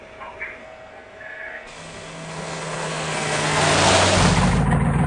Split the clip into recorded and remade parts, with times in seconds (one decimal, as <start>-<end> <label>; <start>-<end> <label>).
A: 0.0-0.6 recorded; 0.6-3.6 remade; 3.6-5.1 recorded